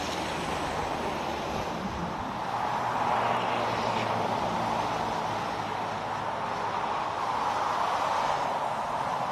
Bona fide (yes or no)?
yes